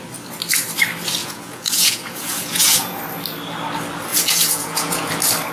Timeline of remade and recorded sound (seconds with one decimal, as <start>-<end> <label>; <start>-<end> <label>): 0.0-1.2 recorded; 1.2-3.0 remade; 3.0-4.1 recorded; 4.1-5.1 remade; 5.1-5.5 recorded